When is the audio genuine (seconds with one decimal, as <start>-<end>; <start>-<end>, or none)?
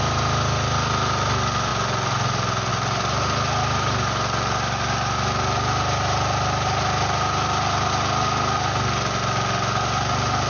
0.0-10.5